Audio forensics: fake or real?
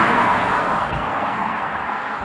fake